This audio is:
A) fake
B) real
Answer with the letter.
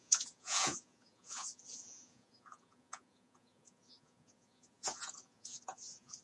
A